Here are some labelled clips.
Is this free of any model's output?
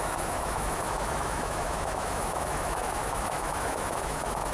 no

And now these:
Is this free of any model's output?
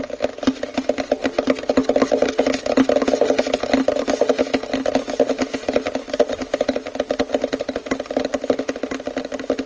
yes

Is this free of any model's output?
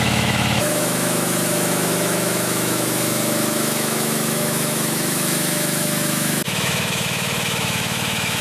no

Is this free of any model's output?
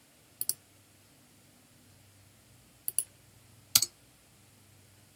yes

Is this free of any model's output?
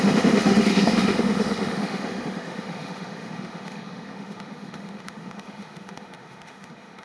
no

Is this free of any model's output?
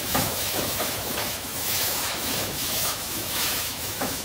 no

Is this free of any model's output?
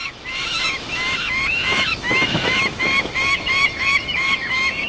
no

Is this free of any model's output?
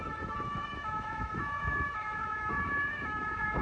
no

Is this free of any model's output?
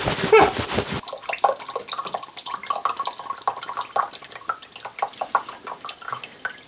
yes